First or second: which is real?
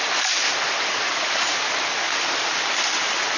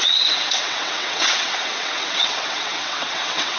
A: first